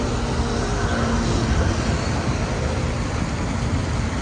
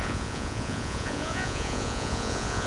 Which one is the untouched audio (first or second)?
first